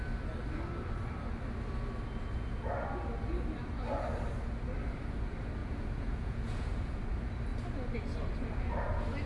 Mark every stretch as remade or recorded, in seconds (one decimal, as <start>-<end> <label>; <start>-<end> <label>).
0.0-5.6 recorded; 5.6-7.0 remade; 7.0-9.3 recorded